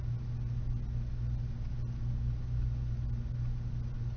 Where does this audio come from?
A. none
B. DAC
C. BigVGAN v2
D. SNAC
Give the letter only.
A